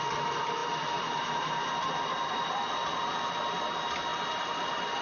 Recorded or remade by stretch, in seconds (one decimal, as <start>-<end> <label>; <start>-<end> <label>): 0.0-5.0 recorded